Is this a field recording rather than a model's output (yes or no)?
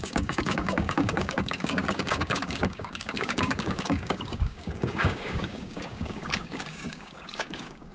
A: no